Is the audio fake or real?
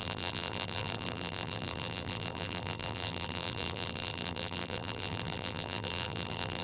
fake